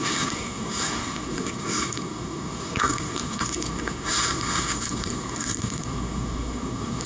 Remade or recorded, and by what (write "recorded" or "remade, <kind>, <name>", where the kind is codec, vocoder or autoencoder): remade, codec, SNAC